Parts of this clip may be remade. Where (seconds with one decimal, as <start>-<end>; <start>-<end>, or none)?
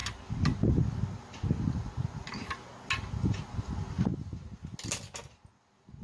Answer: none